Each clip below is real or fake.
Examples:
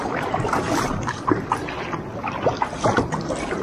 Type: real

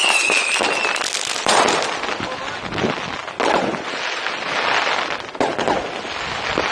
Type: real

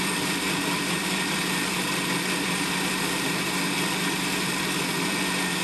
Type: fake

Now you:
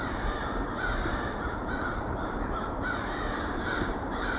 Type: fake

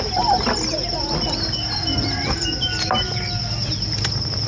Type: real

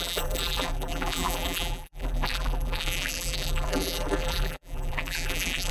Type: fake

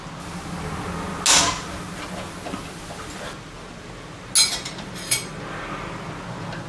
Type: real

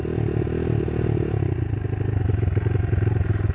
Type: real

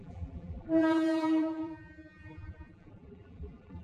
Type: fake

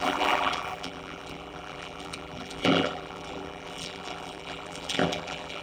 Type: fake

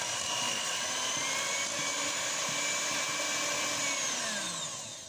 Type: real